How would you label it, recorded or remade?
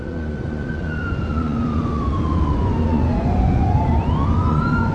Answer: remade